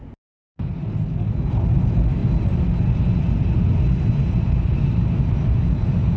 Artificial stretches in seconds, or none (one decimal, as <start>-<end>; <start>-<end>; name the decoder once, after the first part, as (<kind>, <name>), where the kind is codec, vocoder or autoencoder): none